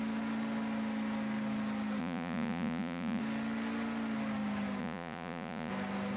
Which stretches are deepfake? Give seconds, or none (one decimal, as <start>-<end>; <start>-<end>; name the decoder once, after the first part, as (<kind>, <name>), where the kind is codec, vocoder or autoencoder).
2.0-3.2 (vocoder, Vocos); 4.8-5.7